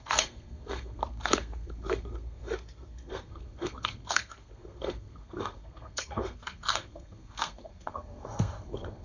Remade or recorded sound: remade